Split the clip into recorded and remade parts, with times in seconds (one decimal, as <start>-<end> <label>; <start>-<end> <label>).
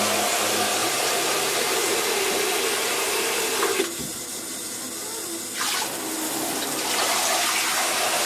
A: 0.0-0.8 recorded; 0.8-2.6 remade; 2.6-4.1 recorded; 4.1-4.6 remade; 4.6-8.3 recorded